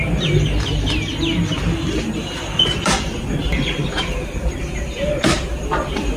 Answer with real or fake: real